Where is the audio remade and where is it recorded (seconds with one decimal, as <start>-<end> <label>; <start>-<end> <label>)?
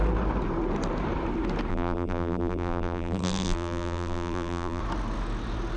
0.0-1.7 recorded; 1.7-4.8 remade; 4.8-5.8 recorded